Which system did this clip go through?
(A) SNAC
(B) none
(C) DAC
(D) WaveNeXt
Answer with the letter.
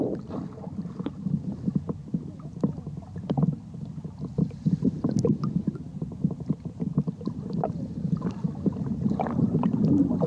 B